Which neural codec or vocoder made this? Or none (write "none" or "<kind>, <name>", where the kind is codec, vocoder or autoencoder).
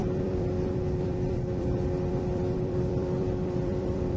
vocoder, BigVGAN v2